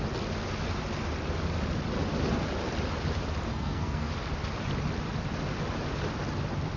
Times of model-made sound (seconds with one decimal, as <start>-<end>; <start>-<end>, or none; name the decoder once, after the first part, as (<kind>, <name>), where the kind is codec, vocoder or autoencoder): 3.5-4.1 (codec, SNAC)